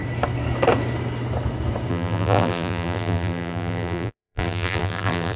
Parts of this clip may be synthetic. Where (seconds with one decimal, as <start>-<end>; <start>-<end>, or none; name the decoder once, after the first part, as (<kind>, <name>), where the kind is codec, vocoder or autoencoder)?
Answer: 1.9-5.4 (vocoder, BigVGAN v2)